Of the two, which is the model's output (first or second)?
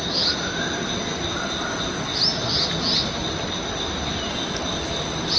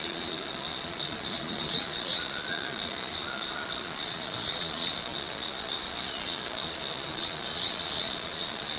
second